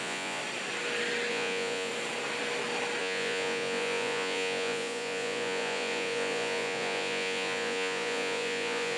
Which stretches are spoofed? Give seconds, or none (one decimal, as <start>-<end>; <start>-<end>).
0.0-0.4; 1.3-1.9; 3.0-9.0